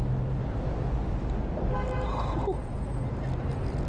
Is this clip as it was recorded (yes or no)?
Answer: yes